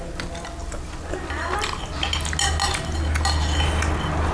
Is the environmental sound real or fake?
real